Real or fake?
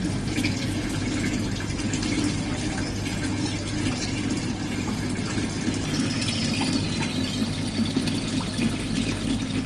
real